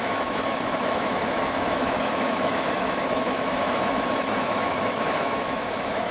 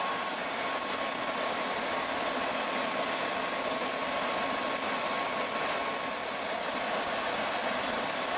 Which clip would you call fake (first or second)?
first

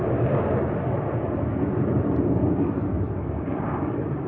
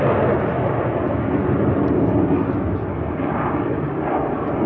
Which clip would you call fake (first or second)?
first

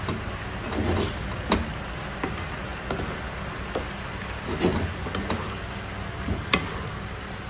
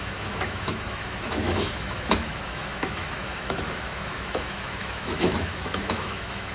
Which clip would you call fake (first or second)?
second